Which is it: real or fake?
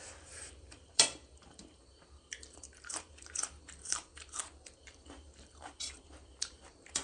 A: fake